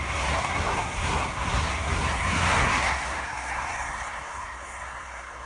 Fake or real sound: fake